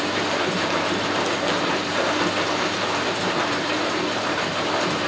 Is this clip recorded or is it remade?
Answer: remade